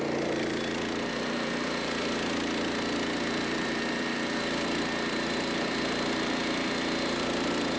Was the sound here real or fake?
fake